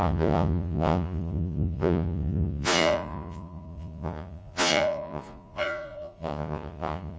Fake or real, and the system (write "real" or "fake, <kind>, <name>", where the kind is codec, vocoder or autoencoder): fake, vocoder, Vocos